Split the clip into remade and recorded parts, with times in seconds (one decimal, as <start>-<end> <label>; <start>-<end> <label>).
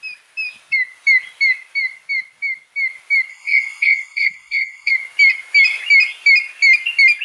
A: 0.0-3.3 recorded; 3.3-4.9 remade; 4.9-7.2 recorded